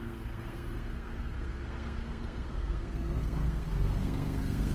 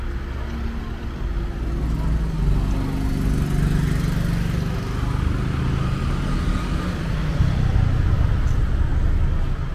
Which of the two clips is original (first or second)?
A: second